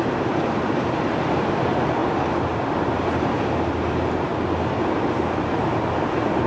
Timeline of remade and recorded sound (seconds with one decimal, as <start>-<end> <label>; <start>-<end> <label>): 0.0-2.0 remade; 2.0-3.0 recorded; 3.0-4.3 remade; 4.3-5.6 recorded; 5.6-6.5 remade